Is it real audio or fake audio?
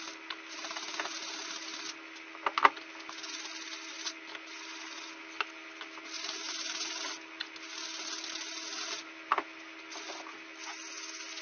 real